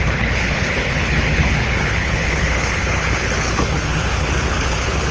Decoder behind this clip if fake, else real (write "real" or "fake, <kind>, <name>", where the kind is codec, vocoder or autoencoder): fake, codec, HILCodec